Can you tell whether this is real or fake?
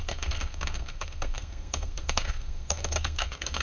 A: fake